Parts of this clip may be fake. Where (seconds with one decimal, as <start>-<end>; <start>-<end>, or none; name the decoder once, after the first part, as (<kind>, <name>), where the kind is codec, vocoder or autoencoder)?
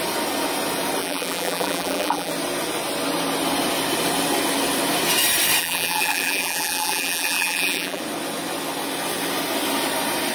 1.0-2.3 (vocoder, BigVGAN v2); 5.6-8.0